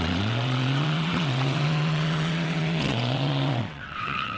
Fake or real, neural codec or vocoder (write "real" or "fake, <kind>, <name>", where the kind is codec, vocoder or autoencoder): fake, vocoder, WaveNeXt